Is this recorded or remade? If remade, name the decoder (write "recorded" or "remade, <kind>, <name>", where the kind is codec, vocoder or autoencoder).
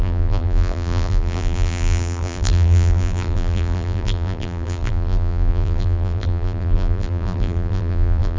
remade, vocoder, BigVGAN v2